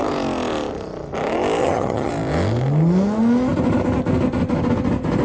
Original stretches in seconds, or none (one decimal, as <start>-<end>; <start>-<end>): 0.0-1.6; 2.1-5.2